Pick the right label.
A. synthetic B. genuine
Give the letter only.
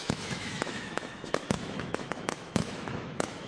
A